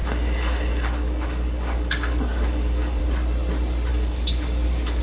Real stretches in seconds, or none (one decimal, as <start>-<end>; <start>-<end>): 3.0-3.9